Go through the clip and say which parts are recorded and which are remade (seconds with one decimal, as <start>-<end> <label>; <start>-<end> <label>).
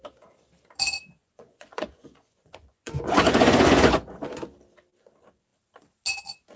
0.0-1.2 recorded; 1.2-4.2 remade; 4.2-6.6 recorded